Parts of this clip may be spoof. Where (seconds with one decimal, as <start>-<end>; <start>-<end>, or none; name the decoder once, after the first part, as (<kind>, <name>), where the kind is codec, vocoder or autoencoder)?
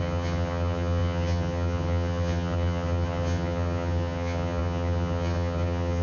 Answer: 0.0-6.0 (vocoder, HiFi-GAN)